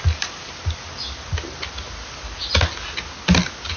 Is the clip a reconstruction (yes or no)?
no